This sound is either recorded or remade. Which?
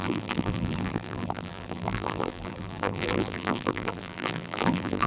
remade